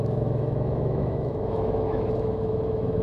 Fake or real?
fake